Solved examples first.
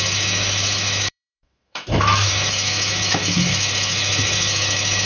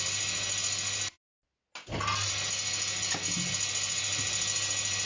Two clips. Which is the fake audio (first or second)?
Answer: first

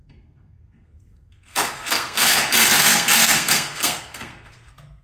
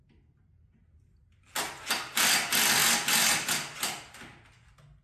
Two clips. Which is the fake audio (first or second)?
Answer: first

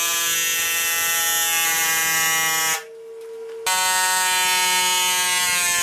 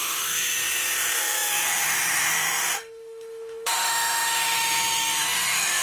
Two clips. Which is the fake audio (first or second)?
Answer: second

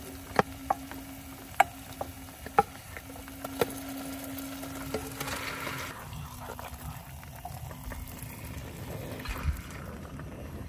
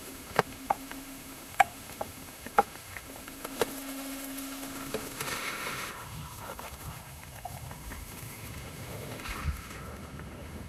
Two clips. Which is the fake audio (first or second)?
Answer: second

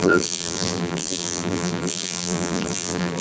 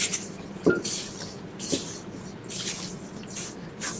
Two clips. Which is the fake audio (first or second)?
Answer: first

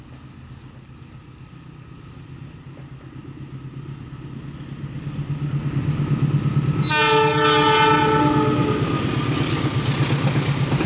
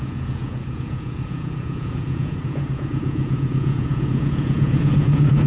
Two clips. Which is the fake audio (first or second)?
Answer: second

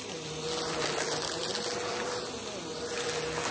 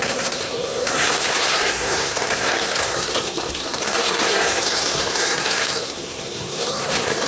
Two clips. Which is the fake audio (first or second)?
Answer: second